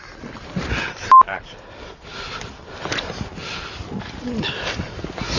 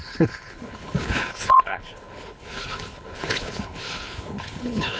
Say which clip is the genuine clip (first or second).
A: first